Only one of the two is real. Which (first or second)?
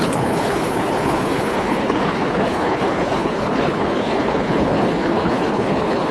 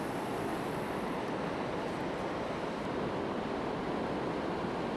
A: second